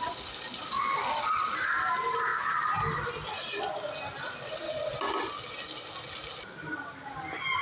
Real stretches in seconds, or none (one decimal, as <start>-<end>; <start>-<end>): 0.0-7.6